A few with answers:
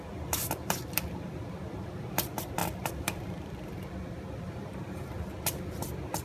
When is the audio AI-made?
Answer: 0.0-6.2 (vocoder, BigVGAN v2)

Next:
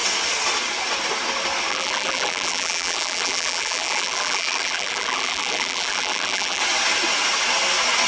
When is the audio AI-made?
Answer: 1.7-6.6 (vocoder, BigVGAN v2)

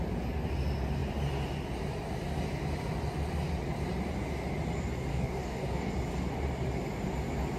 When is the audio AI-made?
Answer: 5.1-5.9 (codec, DAC)

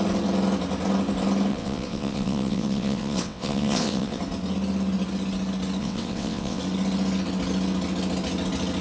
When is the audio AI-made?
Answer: 1.5-4.2 (vocoder, WaveNeXt); 5.8-6.6

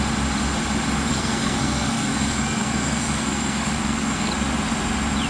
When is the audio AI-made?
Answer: 1.1-4.3 (codec, SNAC)

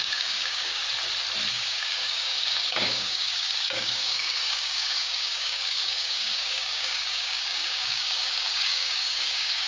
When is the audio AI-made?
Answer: 0.0-0.8 (codec, DAC); 1.5-9.7

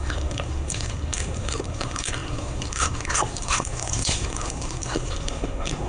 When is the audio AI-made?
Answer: 0.0-5.9 (codec, SNAC)

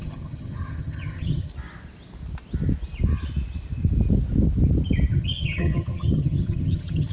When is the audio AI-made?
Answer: 0.0-1.5 (vocoder, HiFi-GAN); 5.1-7.1